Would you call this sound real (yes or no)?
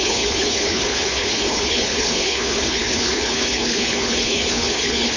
no